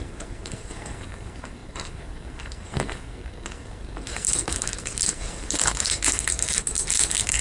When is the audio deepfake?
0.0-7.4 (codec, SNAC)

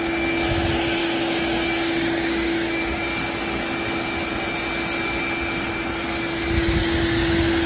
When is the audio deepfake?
1.0-2.8 (codec, DAC); 6.8-7.7